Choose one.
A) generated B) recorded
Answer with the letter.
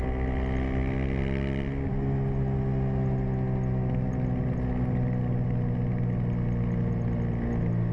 B